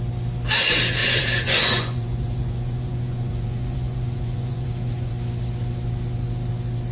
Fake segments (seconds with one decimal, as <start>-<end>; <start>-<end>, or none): 1.0-5.1